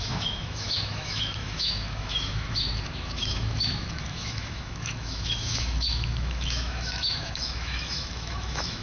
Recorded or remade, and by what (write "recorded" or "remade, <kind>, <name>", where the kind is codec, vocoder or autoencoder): remade, autoencoder, DAC-VAE